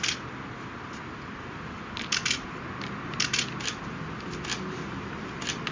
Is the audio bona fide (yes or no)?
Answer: yes